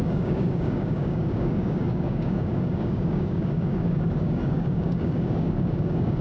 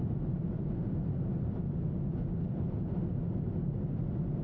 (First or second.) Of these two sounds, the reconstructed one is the first